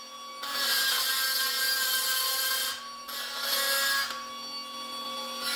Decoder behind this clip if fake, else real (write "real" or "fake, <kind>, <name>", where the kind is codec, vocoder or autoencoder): real